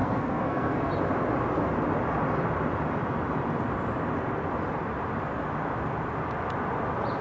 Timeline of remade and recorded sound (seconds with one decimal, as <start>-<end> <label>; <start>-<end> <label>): 0.0-0.9 remade; 0.9-7.2 recorded